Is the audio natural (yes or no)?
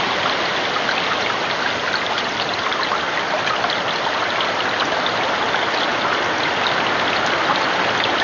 yes